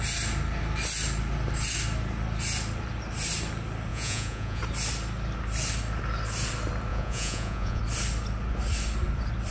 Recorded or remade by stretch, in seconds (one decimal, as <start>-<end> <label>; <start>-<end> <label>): 0.0-3.9 recorded; 3.9-4.6 remade; 4.6-6.9 recorded; 6.9-7.8 remade; 7.8-9.5 recorded